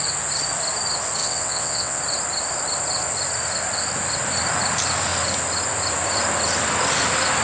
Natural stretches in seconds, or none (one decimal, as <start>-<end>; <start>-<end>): 0.0-1.2; 2.0-7.4